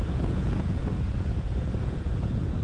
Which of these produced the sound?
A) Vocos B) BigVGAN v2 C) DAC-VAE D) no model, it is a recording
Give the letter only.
A